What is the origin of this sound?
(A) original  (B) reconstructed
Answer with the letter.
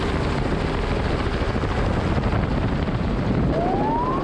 A